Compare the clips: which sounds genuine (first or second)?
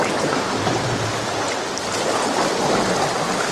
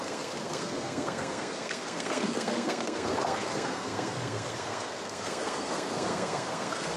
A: first